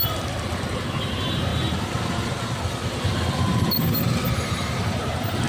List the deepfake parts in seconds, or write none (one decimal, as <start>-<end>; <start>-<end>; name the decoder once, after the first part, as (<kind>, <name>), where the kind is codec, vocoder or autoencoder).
none